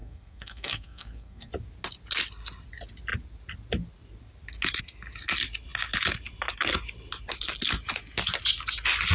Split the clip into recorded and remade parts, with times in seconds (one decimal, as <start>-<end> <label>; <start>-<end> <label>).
0.0-1.5 remade; 1.5-9.1 recorded